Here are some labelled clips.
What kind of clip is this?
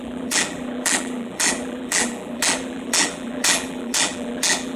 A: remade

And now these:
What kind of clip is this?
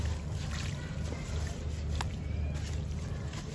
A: recorded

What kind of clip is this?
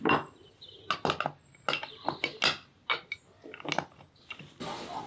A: recorded